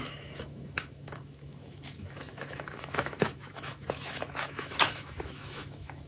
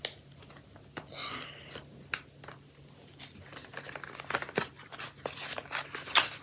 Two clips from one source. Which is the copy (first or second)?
first